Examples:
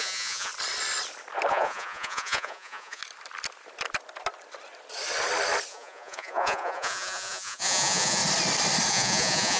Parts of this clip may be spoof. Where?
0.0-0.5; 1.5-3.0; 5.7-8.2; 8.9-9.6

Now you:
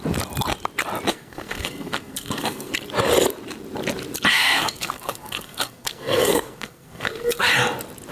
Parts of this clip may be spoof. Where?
1.1-2.7; 4.3-7.5

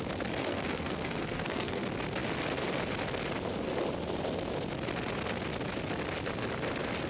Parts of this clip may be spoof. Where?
0.4-1.8

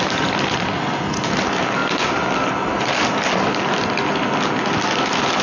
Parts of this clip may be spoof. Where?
none

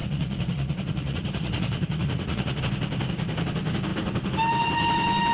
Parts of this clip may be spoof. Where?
0.0-2.6

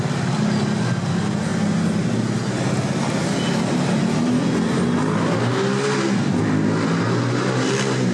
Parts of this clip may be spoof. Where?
none